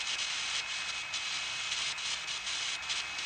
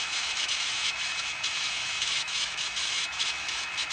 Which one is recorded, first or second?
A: first